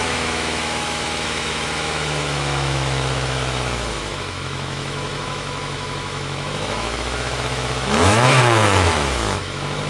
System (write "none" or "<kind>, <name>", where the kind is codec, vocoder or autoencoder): autoencoder, DAC-VAE